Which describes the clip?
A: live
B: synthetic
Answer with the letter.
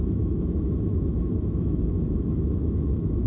B